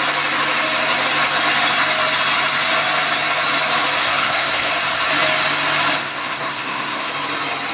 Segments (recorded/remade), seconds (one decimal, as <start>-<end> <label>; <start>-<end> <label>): 0.0-4.0 recorded; 4.0-4.7 remade; 4.7-6.0 recorded; 6.0-7.1 remade; 7.1-7.7 recorded